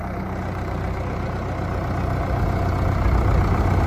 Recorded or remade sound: recorded